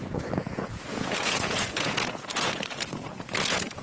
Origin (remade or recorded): remade